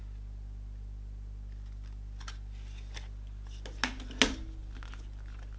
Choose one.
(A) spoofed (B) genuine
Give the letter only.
B